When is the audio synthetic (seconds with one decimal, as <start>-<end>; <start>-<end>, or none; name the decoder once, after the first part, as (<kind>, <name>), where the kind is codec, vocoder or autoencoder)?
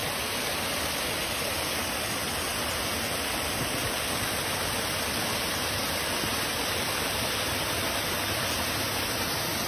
none